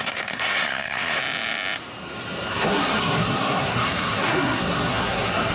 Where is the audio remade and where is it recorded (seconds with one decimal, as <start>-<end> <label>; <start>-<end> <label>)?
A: 0.0-1.2 remade; 1.2-2.5 recorded; 2.5-5.5 remade